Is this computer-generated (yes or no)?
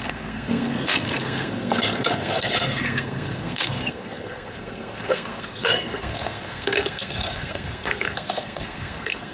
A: yes